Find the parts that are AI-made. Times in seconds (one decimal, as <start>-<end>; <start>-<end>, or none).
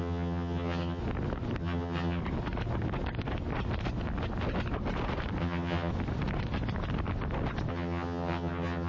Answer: 0.0-1.0; 1.6-2.2; 5.4-5.9; 7.7-8.9